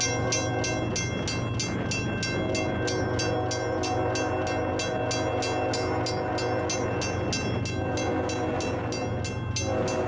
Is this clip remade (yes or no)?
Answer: no